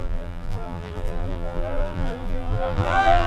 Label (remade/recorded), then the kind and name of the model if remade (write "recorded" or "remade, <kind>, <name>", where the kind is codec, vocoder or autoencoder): remade, vocoder, BigVGAN v2